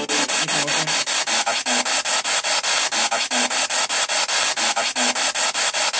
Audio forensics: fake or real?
real